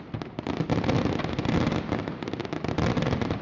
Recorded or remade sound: recorded